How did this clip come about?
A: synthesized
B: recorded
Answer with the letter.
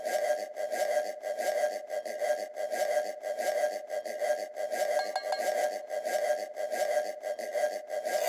B